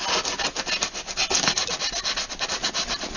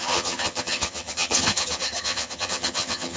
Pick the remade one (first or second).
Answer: second